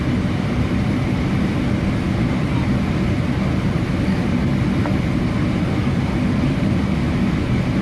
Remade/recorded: recorded